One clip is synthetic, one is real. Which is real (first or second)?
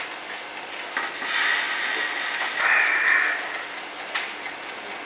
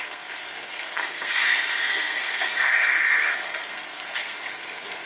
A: first